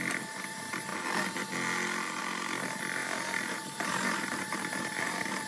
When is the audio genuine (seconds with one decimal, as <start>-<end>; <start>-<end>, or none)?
0.0-3.0